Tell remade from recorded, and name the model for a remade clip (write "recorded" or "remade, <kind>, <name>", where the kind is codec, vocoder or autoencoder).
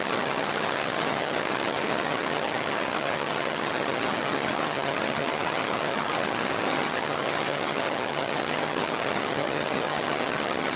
remade, vocoder, HiFi-GAN